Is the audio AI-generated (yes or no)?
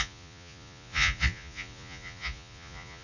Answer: yes